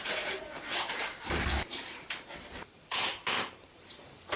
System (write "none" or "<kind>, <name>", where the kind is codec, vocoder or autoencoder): vocoder, BigVGAN v2